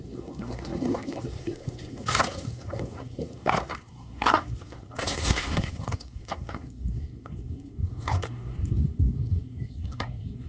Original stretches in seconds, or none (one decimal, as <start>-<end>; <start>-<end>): none